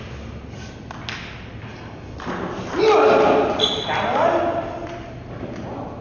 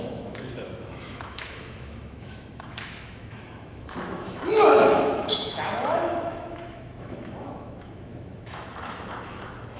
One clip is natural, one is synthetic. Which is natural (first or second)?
first